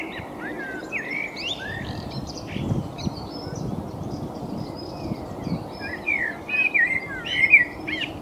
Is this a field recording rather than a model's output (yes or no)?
no